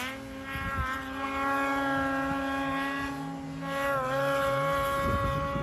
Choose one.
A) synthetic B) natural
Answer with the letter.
B